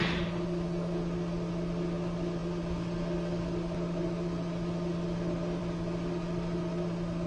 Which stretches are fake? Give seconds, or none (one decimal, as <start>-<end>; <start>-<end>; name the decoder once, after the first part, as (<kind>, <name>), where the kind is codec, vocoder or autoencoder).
none